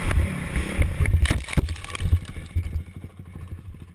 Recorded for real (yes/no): yes